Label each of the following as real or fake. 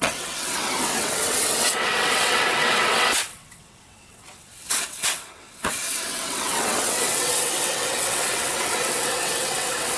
fake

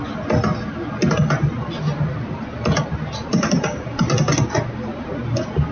real